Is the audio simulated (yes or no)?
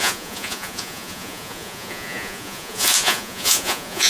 yes